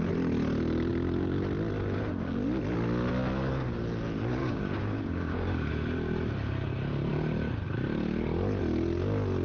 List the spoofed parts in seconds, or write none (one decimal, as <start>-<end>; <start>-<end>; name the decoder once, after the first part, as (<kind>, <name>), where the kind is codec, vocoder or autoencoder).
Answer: 4.4-5.7 (codec, DAC)